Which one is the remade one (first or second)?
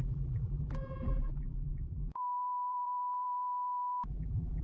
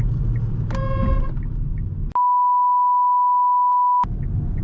first